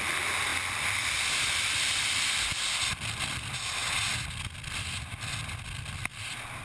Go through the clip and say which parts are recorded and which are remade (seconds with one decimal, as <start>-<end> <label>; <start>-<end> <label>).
0.0-6.6 recorded

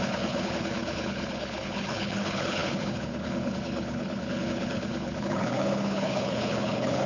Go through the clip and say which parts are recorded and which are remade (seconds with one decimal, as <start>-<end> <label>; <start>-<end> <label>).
0.0-7.1 remade

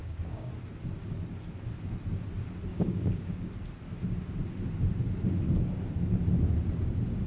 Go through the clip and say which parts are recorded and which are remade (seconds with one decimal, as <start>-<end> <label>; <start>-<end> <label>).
0.0-0.5 remade; 0.5-2.7 recorded; 2.7-3.5 remade; 3.5-7.3 recorded

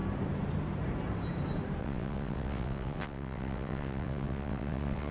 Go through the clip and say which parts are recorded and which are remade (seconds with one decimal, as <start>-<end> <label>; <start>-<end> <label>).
0.0-1.8 recorded; 1.8-5.1 remade